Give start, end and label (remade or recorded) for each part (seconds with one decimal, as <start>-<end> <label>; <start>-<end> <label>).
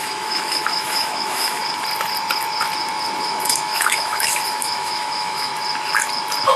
0.0-1.6 remade; 1.6-3.2 recorded; 3.2-5.5 remade; 5.5-6.6 recorded